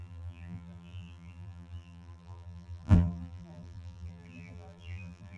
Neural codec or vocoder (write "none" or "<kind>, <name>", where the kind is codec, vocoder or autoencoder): vocoder, BigVGAN v2